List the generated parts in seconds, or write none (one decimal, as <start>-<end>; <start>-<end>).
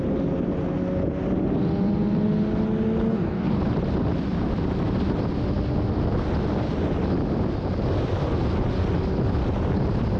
3.1-3.6